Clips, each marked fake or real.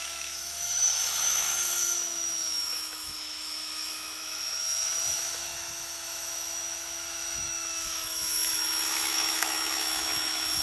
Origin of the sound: fake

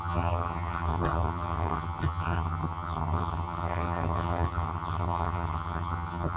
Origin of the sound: fake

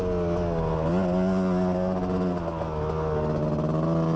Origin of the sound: real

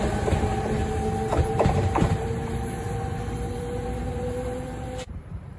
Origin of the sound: fake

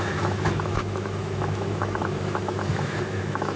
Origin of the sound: fake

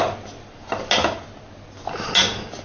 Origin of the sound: real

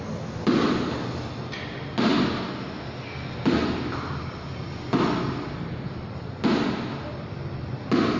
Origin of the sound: real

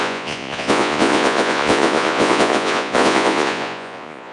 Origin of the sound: fake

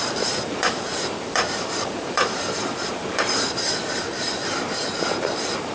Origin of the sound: fake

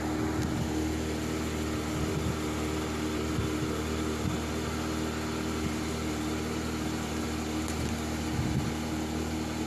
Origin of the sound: real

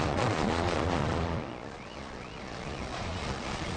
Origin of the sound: fake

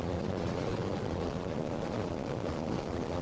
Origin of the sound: fake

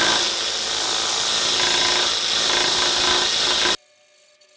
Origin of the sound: real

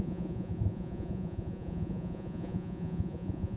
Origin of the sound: fake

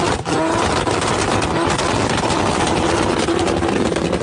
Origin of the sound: real